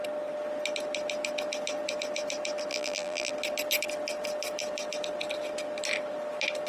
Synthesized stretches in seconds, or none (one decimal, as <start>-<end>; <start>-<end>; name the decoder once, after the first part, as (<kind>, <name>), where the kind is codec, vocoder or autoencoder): 2.7-3.3 (vocoder, BigVGAN v2)

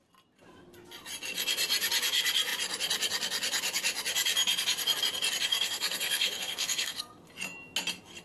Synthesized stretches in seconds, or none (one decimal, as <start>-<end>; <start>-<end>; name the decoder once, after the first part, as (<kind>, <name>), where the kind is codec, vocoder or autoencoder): 5.5-7.2 (codec, SNAC)

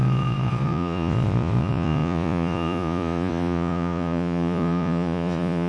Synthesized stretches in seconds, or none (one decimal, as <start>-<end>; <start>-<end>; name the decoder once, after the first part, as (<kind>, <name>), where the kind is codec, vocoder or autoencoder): 0.0-5.7 (vocoder, Vocos)

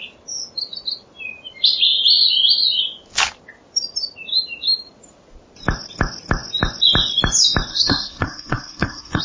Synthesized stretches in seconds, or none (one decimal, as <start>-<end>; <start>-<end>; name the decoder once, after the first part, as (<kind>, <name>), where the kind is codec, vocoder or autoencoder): 7.7-9.2 (codec, SNAC)